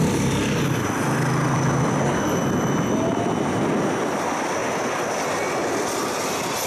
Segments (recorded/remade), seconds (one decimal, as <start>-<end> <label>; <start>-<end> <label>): 0.0-6.7 recorded